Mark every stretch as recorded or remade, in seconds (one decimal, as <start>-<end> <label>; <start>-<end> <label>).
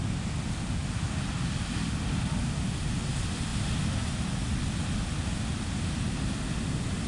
0.0-7.1 recorded